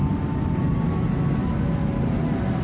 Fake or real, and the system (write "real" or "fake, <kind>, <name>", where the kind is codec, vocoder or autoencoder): real